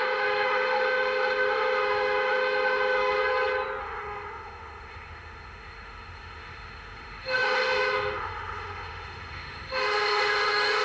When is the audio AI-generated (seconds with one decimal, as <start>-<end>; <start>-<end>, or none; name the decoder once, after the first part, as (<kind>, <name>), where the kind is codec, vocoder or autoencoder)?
0.0-3.2 (autoencoder, DAC-VAE); 3.8-10.8